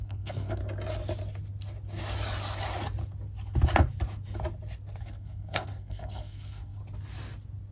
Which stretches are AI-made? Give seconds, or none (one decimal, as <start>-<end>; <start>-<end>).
0.0-0.6; 5.0-6.8

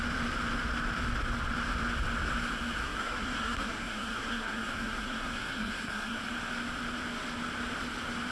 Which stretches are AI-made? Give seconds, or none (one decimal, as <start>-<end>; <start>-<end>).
2.8-6.2

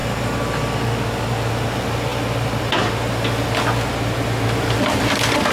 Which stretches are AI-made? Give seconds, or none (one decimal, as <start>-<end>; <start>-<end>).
none